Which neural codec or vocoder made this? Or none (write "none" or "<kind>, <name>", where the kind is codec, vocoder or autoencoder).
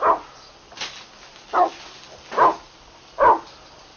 none